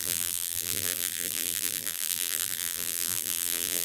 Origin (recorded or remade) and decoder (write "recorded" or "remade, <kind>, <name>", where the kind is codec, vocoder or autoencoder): remade, vocoder, BigVGAN v2